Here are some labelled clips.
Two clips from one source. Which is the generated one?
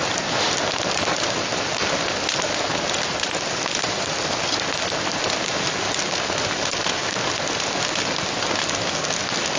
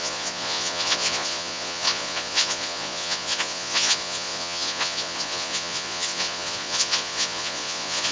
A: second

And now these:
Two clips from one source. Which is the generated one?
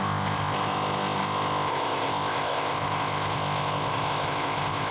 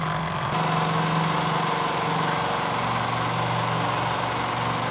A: first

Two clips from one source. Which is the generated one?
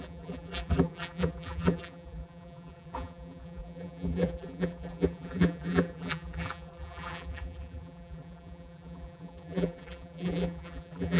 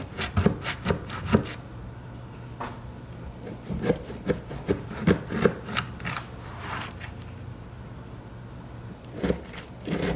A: first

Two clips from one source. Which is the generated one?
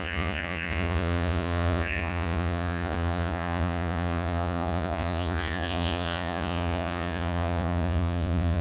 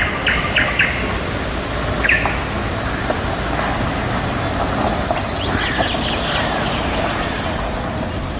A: first